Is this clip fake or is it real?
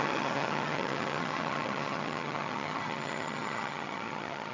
fake